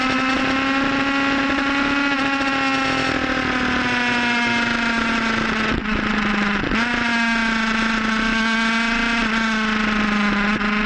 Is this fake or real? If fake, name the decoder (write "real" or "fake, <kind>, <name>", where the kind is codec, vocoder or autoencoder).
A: real